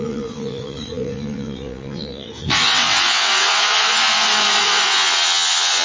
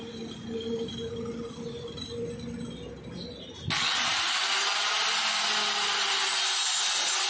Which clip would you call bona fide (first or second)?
second